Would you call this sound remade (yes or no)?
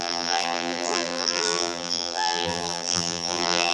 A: yes